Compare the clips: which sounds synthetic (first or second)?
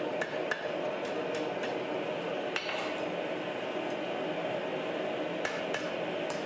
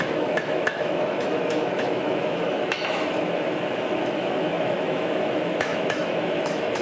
second